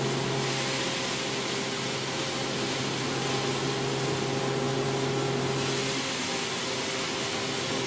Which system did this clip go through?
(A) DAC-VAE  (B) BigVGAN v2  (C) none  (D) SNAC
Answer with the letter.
C